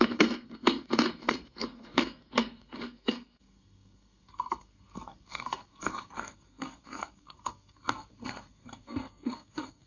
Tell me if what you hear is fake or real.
fake